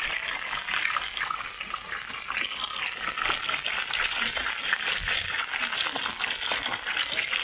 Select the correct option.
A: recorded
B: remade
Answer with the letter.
A